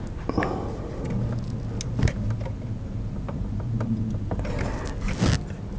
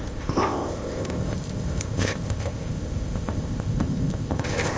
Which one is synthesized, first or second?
second